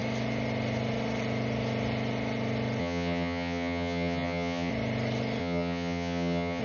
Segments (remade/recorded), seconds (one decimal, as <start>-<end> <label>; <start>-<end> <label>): 0.0-2.8 recorded; 2.8-4.7 remade; 4.7-5.4 recorded; 5.4-6.6 remade